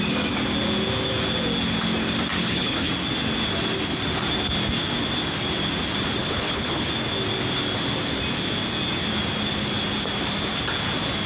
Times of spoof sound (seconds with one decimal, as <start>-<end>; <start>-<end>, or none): 2.4-2.9; 6.2-6.9